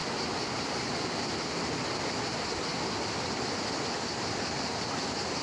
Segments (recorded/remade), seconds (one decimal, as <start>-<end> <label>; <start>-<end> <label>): 0.0-5.4 recorded